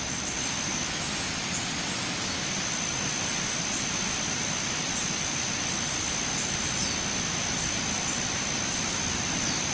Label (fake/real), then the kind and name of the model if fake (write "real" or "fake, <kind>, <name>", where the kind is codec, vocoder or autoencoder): real